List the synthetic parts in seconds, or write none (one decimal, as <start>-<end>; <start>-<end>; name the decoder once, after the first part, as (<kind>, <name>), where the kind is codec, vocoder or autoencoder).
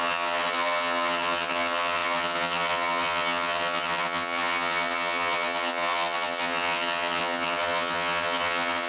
0.0-8.9 (vocoder, HiFi-GAN)